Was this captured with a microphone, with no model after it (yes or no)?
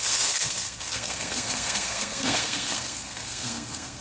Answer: no